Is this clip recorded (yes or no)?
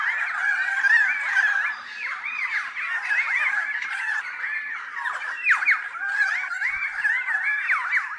yes